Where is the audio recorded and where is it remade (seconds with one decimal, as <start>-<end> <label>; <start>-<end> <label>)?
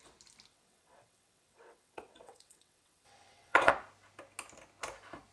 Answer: 0.0-0.5 recorded; 0.5-3.7 remade; 3.7-5.3 recorded